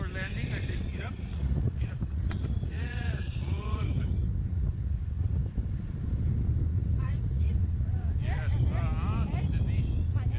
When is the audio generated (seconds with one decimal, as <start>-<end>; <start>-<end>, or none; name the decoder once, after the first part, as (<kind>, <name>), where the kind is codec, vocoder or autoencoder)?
0.9-5.4 (vocoder, Vocos); 6.7-8.1